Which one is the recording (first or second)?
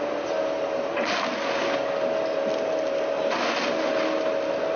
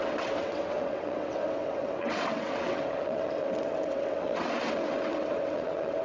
first